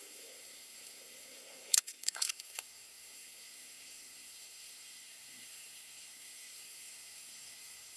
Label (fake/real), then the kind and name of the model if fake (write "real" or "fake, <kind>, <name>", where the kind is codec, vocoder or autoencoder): fake, codec, SNAC